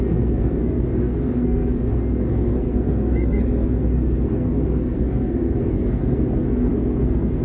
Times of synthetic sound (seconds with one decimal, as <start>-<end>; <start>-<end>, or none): 0.0-7.4